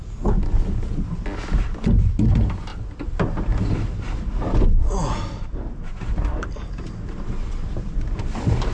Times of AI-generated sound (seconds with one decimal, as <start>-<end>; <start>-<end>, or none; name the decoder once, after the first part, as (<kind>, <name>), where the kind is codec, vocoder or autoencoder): none